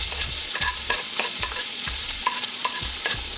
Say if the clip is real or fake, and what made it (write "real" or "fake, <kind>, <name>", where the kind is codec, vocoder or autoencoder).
fake, vocoder, Vocos